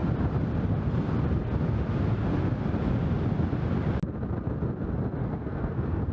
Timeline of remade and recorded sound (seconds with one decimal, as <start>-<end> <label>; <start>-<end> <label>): 0.0-5.2 recorded; 5.2-6.1 remade